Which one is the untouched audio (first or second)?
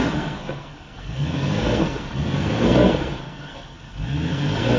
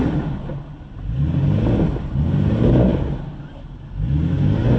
second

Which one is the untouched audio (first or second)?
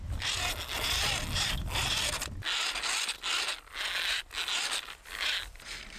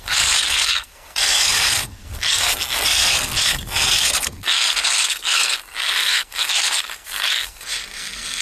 first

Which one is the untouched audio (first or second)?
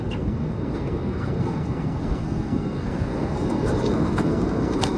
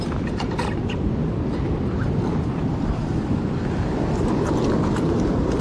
second